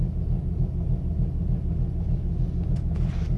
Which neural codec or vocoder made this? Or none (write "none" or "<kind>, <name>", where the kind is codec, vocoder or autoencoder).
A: none